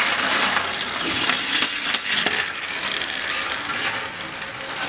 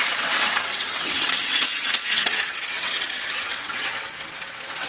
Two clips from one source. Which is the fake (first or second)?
second